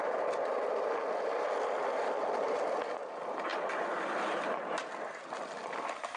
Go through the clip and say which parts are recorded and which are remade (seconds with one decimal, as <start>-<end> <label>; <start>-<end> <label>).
0.0-6.2 recorded